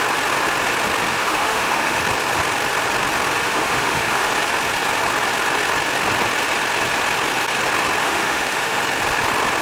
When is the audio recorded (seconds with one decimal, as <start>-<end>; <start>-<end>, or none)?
0.0-1.1; 2.0-3.4; 4.3-8.0; 8.8-9.6